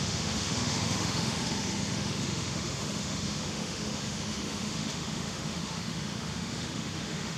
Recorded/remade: remade